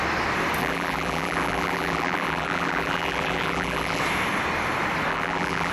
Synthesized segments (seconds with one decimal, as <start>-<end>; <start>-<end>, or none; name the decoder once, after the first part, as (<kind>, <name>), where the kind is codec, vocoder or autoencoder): 0.6-4.0 (vocoder, BigVGAN v2); 5.1-5.7